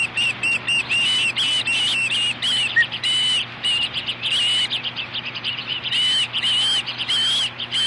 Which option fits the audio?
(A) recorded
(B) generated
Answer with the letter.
A